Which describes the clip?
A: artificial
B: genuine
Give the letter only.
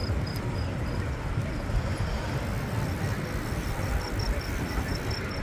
B